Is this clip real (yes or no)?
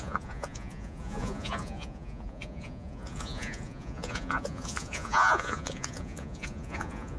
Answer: no